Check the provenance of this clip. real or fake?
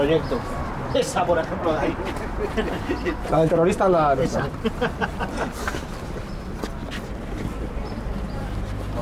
real